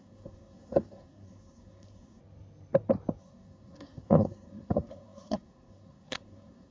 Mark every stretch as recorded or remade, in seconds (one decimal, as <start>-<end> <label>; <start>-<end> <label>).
0.0-2.2 remade; 2.2-3.2 recorded; 3.2-6.7 remade